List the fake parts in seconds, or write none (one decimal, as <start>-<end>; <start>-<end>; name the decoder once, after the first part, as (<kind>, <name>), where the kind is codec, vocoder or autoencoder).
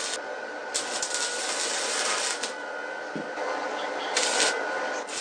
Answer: none